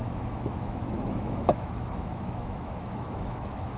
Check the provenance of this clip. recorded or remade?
remade